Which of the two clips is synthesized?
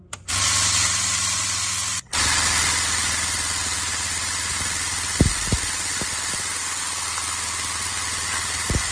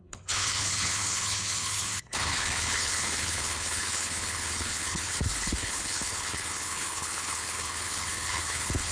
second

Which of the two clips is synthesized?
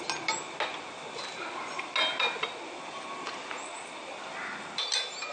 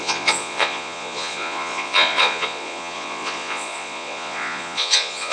second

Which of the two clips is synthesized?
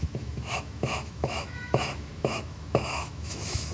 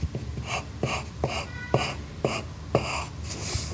first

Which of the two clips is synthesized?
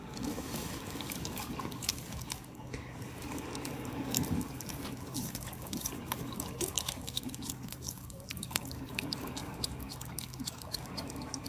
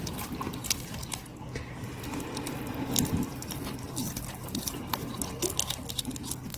first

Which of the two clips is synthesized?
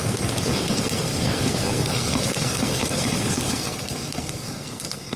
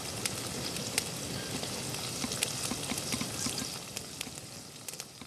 first